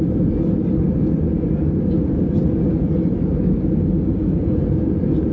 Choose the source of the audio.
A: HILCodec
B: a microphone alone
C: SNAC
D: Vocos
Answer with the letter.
B